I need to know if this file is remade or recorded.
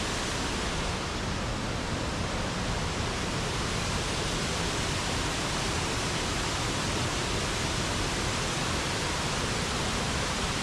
recorded